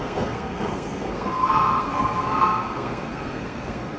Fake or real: fake